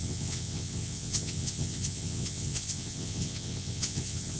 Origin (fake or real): fake